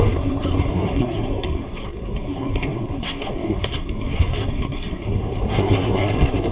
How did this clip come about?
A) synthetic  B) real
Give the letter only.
A